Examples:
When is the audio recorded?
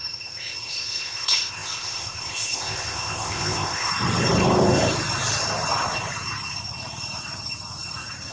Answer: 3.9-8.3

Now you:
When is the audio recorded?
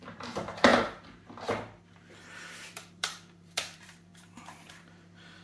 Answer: 0.7-2.7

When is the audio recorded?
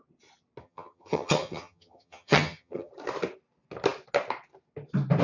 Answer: 0.0-0.6; 2.9-5.2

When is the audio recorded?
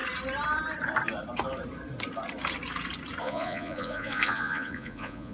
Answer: 0.0-3.2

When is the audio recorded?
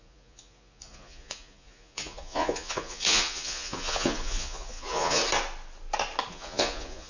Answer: 5.2-6.3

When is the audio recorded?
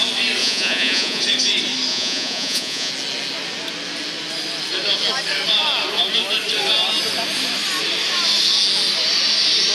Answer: 0.0-0.4; 1.2-1.9; 2.9-9.7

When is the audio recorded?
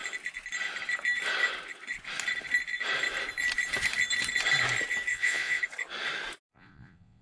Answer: 0.0-5.1; 5.6-6.5